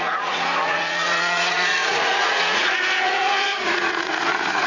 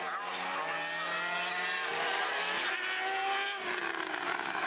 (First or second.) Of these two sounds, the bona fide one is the second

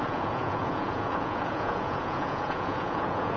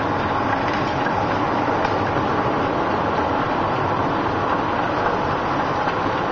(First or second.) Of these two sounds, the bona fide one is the second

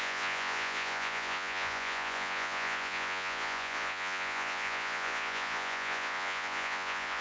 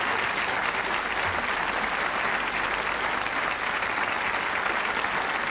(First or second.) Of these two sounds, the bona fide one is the second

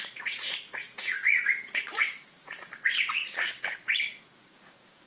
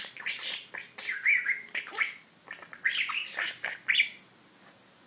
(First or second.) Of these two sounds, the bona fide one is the second